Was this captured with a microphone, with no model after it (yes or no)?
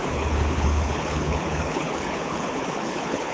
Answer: no